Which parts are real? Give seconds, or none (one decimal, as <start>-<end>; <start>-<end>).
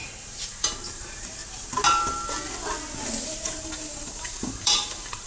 1.4-3.3